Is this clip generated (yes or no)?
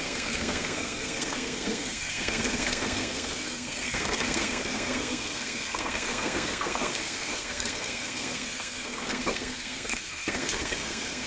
yes